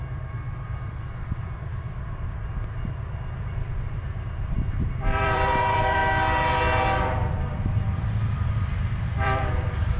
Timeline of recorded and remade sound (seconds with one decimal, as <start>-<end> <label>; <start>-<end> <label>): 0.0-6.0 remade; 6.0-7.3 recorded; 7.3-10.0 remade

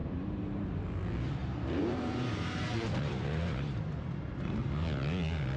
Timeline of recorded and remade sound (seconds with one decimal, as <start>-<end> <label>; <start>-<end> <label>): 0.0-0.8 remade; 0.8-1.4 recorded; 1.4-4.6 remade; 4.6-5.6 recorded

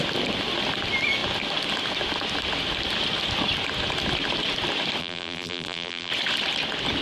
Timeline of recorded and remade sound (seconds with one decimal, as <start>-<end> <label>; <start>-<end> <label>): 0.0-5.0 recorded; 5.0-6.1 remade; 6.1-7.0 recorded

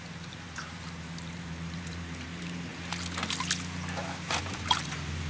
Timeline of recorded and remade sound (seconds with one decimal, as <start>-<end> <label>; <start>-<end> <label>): 0.0-2.7 remade; 2.7-4.4 recorded; 4.4-5.3 remade

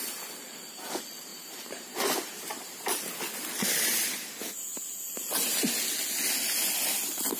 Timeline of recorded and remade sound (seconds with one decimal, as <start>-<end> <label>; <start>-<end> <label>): 0.0-1.3 recorded; 1.3-3.1 remade; 3.1-7.4 recorded

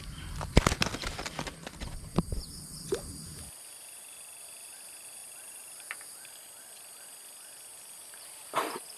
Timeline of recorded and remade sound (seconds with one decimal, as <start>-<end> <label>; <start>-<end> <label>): 0.0-5.2 recorded; 5.2-5.8 remade; 5.8-7.7 recorded; 7.7-8.6 remade; 8.6-9.0 recorded

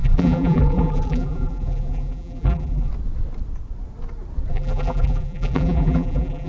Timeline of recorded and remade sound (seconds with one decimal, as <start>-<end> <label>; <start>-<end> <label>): 0.0-2.9 remade; 2.9-4.5 recorded; 4.5-6.5 remade